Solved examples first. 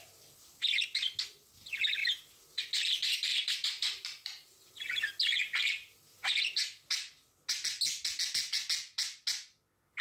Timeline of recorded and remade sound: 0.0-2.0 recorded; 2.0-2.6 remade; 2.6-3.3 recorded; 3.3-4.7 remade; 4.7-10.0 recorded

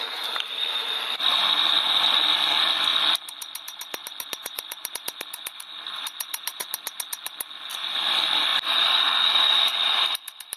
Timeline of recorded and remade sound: 0.0-6.6 remade; 6.6-7.7 recorded; 7.7-8.5 remade; 8.5-10.1 recorded; 10.1-10.6 remade

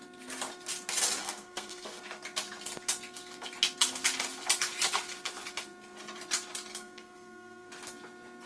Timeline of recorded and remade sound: 0.0-1.2 recorded; 1.2-2.0 remade; 2.0-6.7 recorded; 6.7-7.7 remade; 7.7-8.5 recorded

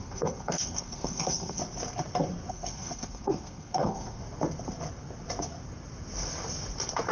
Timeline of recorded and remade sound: 0.0-1.6 remade; 1.6-2.5 recorded; 2.5-4.2 remade; 4.2-7.1 recorded

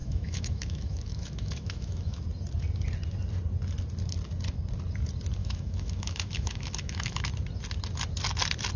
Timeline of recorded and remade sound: 0.0-2.2 remade; 2.2-5.4 recorded; 5.4-7.3 remade; 7.3-8.8 recorded